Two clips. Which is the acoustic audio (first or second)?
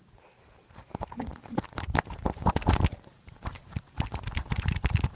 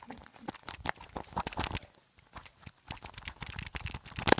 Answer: second